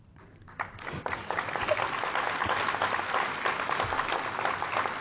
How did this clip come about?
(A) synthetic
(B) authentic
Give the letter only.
B